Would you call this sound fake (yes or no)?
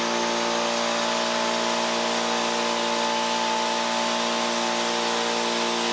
no